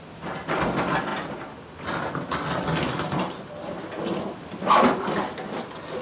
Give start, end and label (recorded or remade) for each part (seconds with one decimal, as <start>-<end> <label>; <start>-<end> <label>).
0.0-6.0 recorded

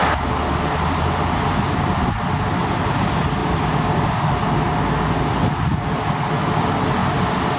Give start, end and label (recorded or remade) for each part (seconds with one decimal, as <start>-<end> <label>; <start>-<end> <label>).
0.0-7.6 recorded

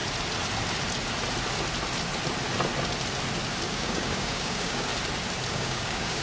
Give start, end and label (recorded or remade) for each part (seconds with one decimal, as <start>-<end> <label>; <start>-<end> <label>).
0.0-3.7 recorded; 3.7-4.9 remade; 4.9-5.5 recorded; 5.5-6.2 remade

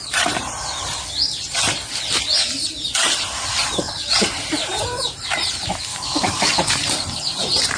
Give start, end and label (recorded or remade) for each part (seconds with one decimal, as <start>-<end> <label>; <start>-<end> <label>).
0.0-5.9 recorded; 5.9-6.5 remade; 6.5-7.8 recorded

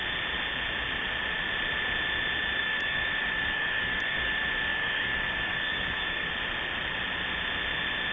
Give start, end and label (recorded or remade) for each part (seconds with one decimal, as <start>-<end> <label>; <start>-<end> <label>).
0.0-2.6 recorded; 2.6-4.3 remade; 4.3-4.7 recorded; 4.7-6.3 remade; 6.3-8.1 recorded

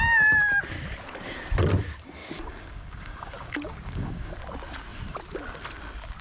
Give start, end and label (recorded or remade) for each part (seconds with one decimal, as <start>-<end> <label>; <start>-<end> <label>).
0.0-2.2 recorded; 2.2-4.3 remade; 4.3-6.2 recorded